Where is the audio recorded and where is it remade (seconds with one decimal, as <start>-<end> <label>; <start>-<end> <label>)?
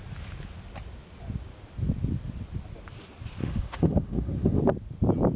0.0-3.4 recorded; 3.4-4.6 remade; 4.6-5.4 recorded